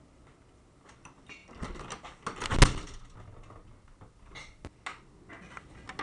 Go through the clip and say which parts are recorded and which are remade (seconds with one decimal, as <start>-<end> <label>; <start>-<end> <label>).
0.0-6.0 recorded